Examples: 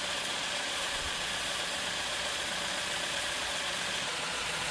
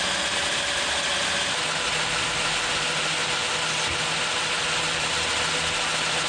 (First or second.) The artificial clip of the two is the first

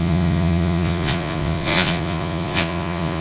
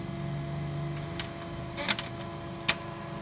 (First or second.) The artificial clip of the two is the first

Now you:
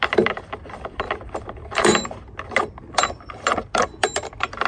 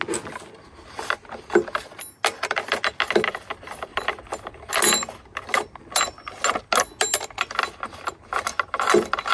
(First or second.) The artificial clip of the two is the first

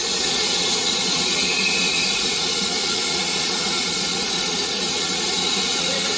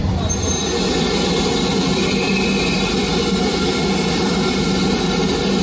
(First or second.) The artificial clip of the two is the first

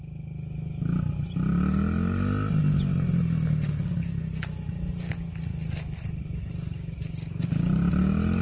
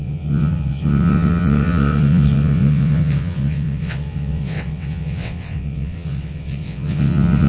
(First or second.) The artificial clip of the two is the second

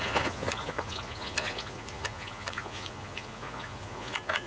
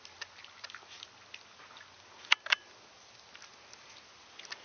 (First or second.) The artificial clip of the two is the first